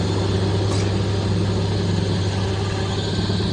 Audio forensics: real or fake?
real